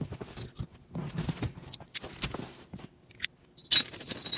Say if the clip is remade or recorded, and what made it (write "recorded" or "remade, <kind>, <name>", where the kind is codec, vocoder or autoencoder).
recorded